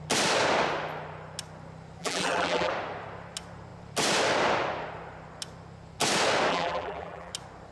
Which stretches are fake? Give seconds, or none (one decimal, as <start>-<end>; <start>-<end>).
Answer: 2.0-2.7; 6.5-7.3